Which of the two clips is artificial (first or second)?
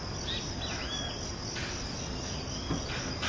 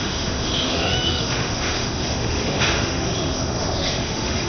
second